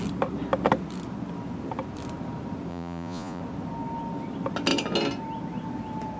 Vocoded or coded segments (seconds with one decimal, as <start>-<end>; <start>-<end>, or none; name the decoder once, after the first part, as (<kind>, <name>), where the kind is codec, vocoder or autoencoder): 2.7-3.4 (vocoder, Vocos)